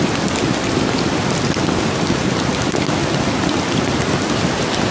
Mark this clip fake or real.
real